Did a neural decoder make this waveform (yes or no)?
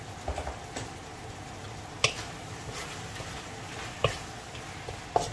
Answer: no